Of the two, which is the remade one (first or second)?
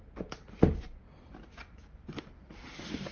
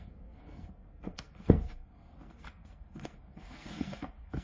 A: second